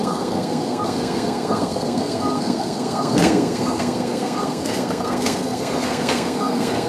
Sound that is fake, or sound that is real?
fake